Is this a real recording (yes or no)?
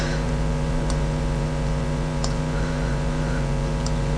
no